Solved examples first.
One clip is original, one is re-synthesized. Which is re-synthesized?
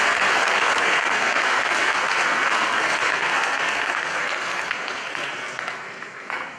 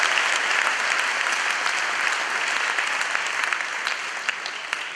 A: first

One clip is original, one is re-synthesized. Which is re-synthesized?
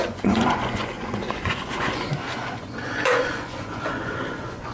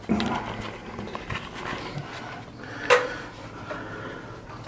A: first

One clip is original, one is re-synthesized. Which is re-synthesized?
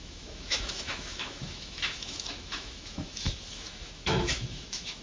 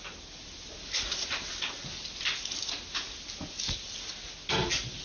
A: first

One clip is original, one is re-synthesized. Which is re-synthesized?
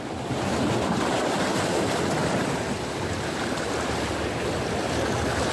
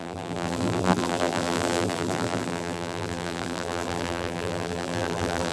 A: second